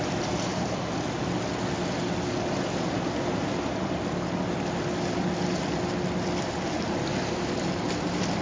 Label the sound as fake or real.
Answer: real